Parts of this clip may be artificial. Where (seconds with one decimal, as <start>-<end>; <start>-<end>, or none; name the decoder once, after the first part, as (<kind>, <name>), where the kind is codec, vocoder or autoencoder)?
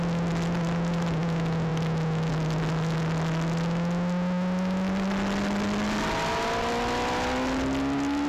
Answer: none